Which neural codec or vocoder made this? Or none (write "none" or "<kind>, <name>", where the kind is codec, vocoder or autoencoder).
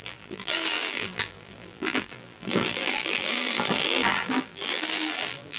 vocoder, BigVGAN v2